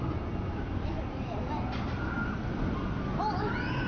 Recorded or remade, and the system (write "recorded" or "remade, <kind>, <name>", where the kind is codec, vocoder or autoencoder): recorded